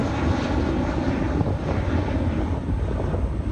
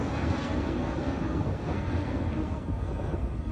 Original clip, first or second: first